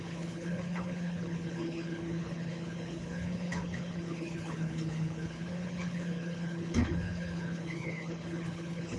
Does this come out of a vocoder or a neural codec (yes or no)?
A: yes